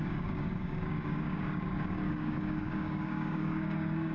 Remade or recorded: remade